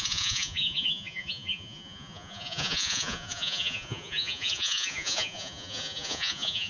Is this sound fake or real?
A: fake